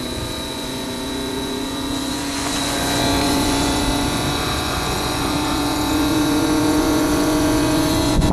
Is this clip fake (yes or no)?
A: yes